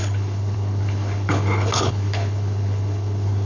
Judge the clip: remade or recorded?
remade